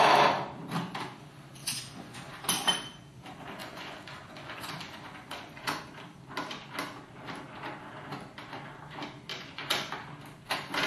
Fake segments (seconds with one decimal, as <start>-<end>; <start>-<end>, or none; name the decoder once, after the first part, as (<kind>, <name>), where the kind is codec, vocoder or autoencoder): 1.6-2.3 (vocoder, Vocos); 3.6-5.8; 9.3-9.9

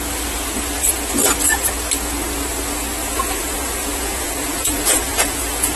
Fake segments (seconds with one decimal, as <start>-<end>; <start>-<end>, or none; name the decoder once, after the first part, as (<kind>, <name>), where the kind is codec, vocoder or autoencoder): 3.0-5.8 (vocoder, Vocos)